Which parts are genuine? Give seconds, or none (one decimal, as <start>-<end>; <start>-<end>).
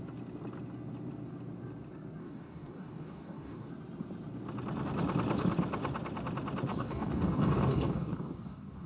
0.0-2.2; 3.7-6.7